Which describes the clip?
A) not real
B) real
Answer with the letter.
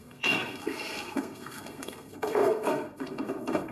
A